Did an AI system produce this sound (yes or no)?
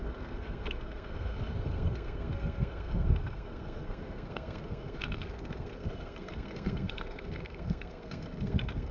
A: yes